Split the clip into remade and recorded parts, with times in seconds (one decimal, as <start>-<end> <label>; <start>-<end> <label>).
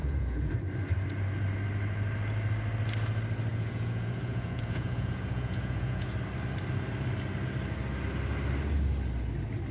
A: 0.0-0.5 remade; 0.5-3.5 recorded; 3.5-6.2 remade; 6.2-9.7 recorded